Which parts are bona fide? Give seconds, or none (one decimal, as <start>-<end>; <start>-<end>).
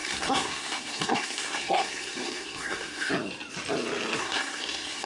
3.1-4.2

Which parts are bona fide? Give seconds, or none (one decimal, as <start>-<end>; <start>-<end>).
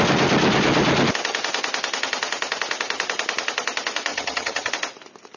0.0-4.1; 4.7-5.4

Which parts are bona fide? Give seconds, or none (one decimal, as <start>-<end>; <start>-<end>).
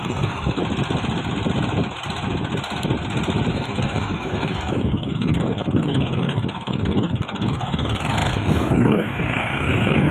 0.6-3.5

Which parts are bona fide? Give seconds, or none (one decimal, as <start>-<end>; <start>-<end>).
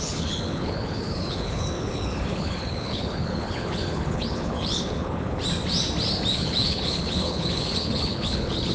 5.4-6.3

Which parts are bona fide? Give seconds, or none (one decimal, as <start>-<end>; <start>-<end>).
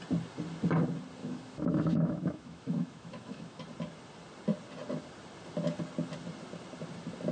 0.0-1.2; 3.6-7.3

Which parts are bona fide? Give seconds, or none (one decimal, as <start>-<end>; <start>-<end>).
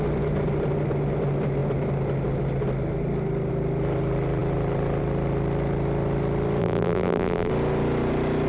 0.0-6.6; 7.5-8.5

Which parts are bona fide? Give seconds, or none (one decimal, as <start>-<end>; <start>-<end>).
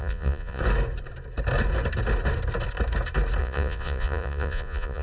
0.6-3.4